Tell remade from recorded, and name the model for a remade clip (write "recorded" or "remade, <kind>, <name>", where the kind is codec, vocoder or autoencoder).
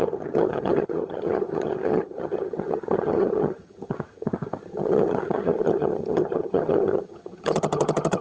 remade, vocoder, HiFi-GAN